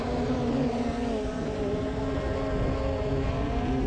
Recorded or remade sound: recorded